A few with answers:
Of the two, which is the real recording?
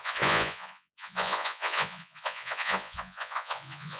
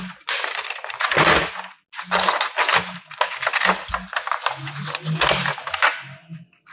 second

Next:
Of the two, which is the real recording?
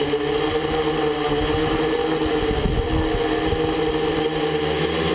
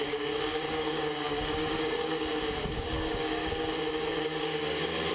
first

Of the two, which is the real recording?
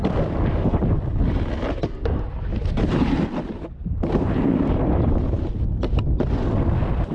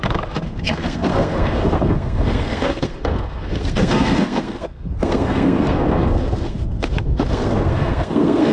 first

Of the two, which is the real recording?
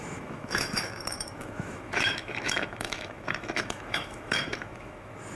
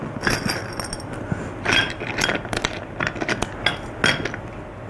second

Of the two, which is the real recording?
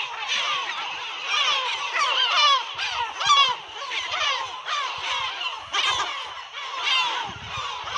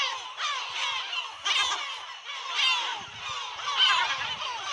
second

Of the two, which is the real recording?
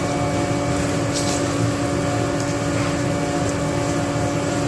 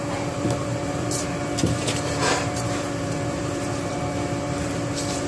first